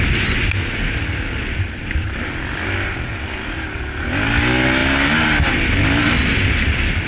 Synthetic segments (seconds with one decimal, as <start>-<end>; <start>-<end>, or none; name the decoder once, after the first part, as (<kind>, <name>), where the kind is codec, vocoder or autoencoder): none